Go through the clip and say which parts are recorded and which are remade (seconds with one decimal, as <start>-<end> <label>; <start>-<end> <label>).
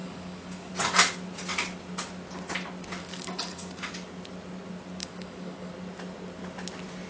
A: 0.0-0.7 remade; 0.7-3.0 recorded; 3.0-3.9 remade; 3.9-5.0 recorded; 5.0-5.7 remade; 5.7-7.1 recorded